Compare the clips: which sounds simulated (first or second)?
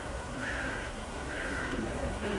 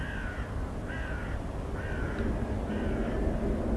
first